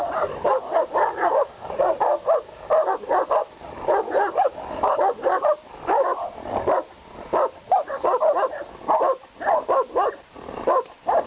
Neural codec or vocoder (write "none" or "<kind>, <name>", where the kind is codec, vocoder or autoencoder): none